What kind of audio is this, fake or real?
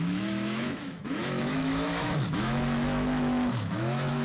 fake